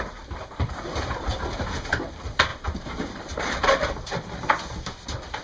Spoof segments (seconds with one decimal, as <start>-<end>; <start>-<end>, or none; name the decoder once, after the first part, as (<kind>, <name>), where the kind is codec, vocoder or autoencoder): 2.5-3.9 (vocoder, BigVGAN v2)